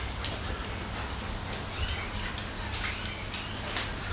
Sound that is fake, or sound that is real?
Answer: real